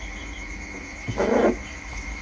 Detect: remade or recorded remade